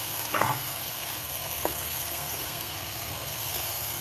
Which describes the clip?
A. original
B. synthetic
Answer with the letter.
B